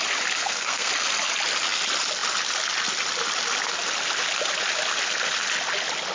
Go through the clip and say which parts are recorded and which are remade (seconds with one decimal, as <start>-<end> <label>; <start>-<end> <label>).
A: 0.0-0.4 recorded; 0.4-0.9 remade; 0.9-6.1 recorded